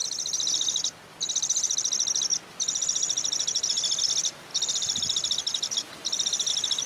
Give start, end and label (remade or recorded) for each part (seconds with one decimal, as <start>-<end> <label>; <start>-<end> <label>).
0.0-4.5 recorded; 4.5-6.5 remade; 6.5-6.9 recorded